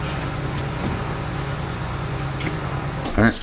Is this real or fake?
fake